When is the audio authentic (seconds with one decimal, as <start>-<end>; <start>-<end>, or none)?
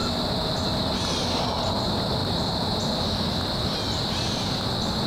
0.0-2.2; 3.4-5.1